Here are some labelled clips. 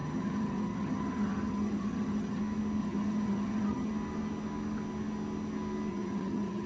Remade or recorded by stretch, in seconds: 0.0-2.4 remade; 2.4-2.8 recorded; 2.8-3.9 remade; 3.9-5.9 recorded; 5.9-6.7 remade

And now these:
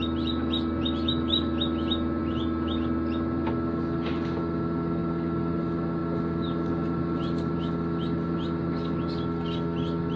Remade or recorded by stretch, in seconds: 0.0-10.2 recorded